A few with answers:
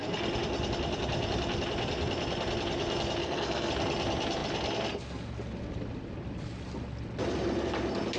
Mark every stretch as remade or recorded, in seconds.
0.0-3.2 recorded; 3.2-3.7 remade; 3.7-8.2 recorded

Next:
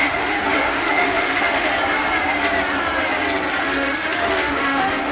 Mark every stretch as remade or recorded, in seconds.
0.0-1.7 remade; 1.7-3.6 recorded; 3.6-5.1 remade

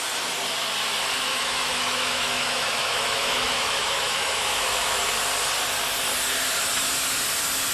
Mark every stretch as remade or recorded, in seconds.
0.0-1.3 recorded; 1.3-5.1 remade; 5.1-7.7 recorded

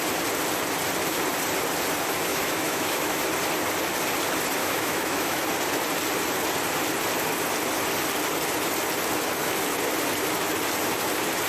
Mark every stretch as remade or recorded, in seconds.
0.0-2.3 recorded; 2.3-3.2 remade; 3.2-4.6 recorded; 4.6-5.4 remade; 5.4-11.5 recorded